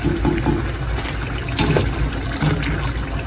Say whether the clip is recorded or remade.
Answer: recorded